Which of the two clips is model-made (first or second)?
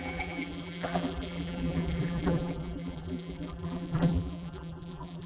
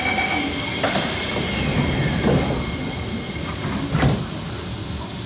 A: first